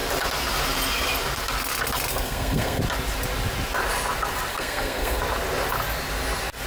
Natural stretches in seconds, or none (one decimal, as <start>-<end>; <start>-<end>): 0.0-2.1; 2.8-4.5; 5.2-6.7